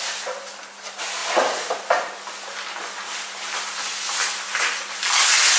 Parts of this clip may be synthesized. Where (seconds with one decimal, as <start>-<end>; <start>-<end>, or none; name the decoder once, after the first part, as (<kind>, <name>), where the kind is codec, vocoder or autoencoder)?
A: none